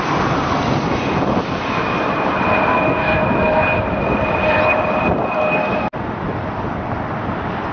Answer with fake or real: real